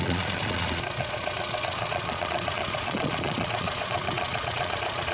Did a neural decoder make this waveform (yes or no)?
yes